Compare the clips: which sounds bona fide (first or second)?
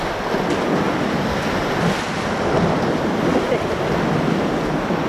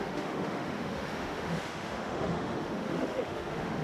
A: first